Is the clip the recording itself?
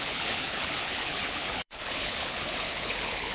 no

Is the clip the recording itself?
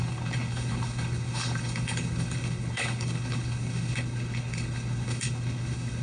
no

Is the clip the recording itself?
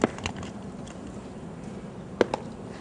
yes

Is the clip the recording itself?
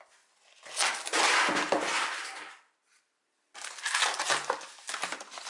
yes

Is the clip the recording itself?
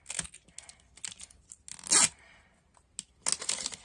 yes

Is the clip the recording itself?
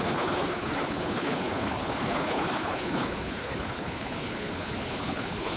no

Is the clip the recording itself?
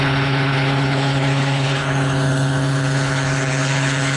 no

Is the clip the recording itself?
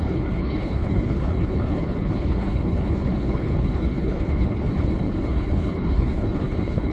no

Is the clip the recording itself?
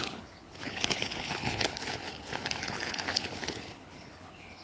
no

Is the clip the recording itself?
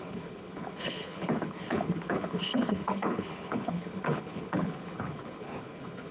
no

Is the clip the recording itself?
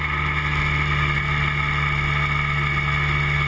yes